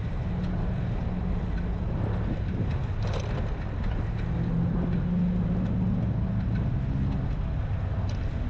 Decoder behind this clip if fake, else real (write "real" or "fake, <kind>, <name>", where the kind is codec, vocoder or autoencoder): real